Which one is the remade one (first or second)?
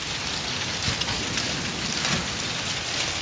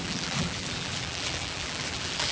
second